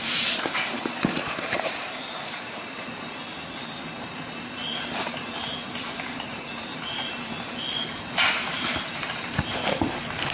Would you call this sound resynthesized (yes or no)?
yes